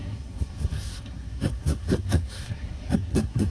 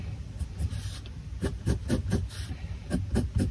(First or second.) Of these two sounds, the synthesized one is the first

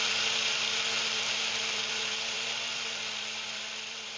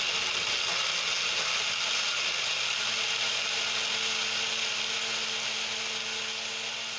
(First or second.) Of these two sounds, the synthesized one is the first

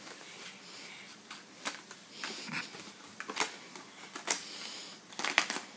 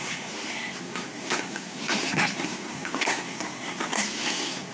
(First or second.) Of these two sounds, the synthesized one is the second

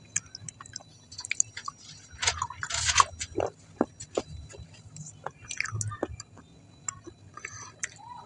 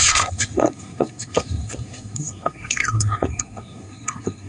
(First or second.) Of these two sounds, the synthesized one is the second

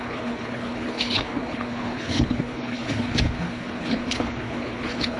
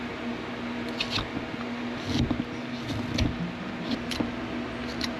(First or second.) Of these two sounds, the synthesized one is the first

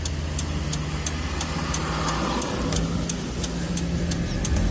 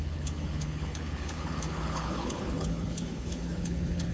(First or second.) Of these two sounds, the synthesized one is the second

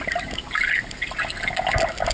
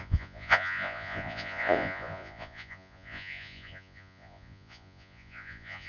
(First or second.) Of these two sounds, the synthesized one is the second